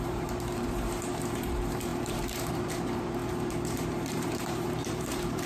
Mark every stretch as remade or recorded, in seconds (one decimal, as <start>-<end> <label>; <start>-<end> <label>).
0.0-5.5 remade

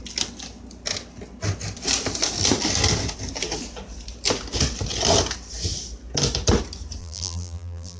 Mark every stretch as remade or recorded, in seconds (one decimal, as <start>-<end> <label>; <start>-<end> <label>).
0.0-7.0 recorded; 7.0-8.0 remade